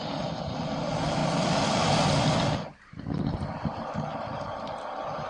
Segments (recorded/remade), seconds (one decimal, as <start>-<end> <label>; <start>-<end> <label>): 0.0-1.2 remade; 1.2-3.2 recorded; 3.2-5.3 remade